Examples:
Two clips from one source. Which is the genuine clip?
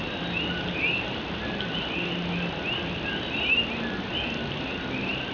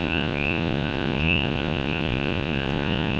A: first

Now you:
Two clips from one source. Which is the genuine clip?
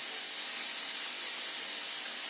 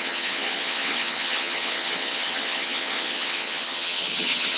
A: first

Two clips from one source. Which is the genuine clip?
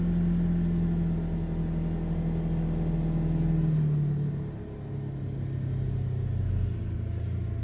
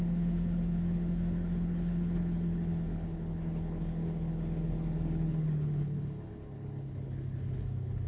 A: first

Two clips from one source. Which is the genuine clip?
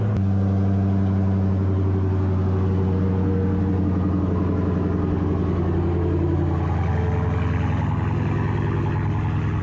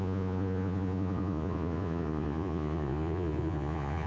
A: first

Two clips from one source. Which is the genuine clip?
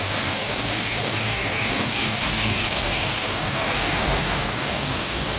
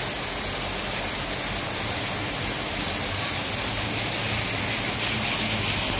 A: second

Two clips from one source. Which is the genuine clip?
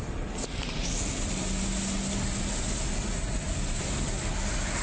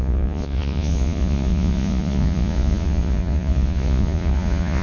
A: first